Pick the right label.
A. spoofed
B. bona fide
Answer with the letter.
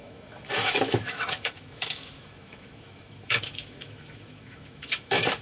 A